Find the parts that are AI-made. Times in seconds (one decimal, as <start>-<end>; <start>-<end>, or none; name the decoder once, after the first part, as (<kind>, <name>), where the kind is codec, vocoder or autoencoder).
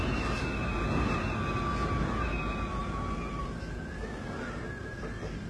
none